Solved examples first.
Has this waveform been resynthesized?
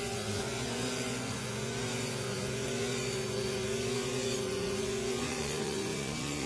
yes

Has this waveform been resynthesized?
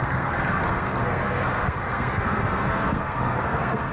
yes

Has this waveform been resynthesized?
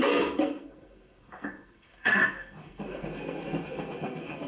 yes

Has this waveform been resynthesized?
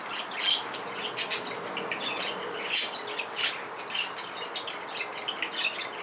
no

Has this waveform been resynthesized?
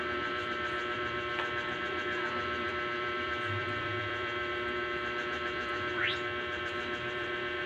yes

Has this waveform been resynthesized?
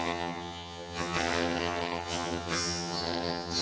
yes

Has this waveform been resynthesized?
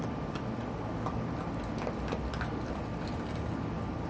no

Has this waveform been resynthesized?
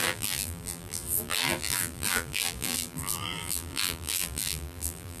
yes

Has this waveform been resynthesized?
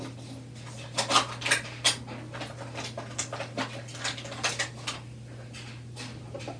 no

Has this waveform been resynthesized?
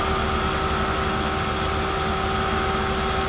no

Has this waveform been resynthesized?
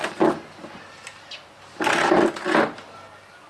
no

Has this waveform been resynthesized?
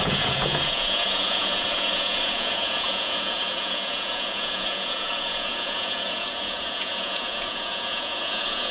yes